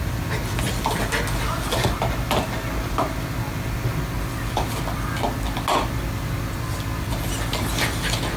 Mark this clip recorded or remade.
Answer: recorded